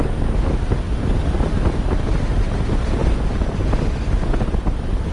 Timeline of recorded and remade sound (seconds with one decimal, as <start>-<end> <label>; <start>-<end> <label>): 0.0-5.1 recorded